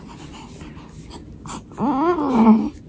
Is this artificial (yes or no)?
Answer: no